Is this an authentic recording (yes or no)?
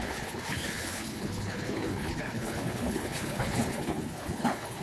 no